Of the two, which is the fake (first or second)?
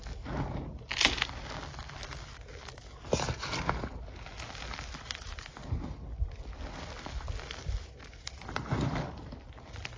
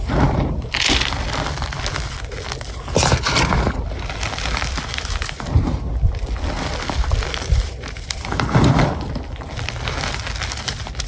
second